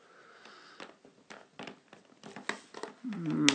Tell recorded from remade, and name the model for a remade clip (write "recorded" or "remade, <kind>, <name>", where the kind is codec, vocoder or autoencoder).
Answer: recorded